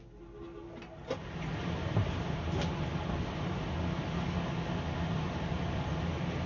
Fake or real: real